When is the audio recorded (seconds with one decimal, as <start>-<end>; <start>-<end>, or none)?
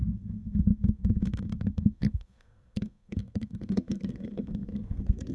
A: none